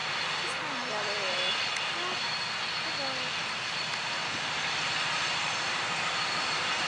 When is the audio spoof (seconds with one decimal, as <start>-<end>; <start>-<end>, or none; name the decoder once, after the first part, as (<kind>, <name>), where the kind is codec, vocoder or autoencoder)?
3.9-5.6 (vocoder, BigVGAN v2)